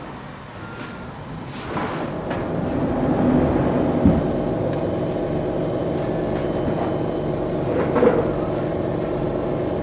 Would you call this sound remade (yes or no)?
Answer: no